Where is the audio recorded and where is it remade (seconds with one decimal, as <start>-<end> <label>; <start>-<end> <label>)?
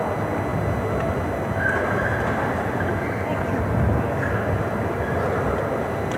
0.0-6.2 recorded